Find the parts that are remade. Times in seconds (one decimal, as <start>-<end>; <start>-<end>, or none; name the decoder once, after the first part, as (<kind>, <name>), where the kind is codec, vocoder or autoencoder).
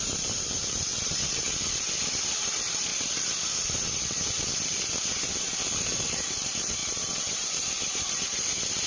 0.0-0.9 (vocoder, BigVGAN v2); 2.2-2.9; 5.8-8.9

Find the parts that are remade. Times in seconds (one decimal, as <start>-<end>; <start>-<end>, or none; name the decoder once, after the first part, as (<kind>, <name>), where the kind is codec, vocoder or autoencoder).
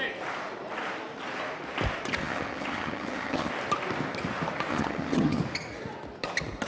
2.2-3.5 (vocoder, HiFi-GAN); 4.7-5.4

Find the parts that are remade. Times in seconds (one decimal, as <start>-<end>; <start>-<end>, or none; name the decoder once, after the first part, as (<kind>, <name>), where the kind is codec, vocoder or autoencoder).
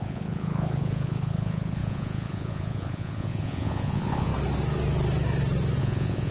0.0-4.3 (vocoder, Vocos); 5.8-6.3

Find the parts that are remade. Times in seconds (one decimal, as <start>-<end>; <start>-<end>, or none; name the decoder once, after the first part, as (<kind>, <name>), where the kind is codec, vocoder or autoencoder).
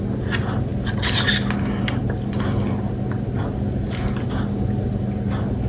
none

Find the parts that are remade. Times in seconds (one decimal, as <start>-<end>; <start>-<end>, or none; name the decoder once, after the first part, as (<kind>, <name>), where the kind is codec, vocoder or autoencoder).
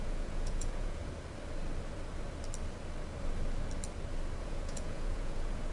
0.0-1.0 (vocoder, Vocos); 4.4-5.7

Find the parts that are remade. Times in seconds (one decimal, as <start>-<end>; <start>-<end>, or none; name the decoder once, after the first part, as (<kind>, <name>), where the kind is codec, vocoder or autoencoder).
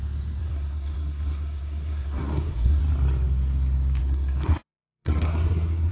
0.4-2.8 (codec, SNAC); 4.0-5.9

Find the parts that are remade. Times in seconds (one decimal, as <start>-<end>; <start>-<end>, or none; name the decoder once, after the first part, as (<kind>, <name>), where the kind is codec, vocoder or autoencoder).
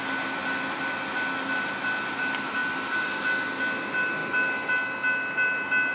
none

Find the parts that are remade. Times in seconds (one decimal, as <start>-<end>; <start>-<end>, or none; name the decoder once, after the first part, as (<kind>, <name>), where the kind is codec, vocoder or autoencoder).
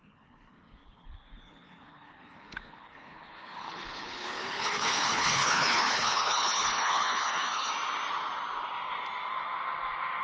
0.0-7.7 (codec, HILCodec)